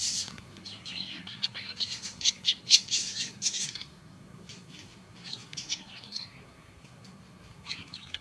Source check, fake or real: fake